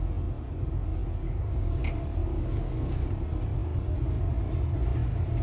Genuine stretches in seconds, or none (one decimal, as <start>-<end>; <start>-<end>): 0.0-1.2; 1.8-2.3; 3.1-5.4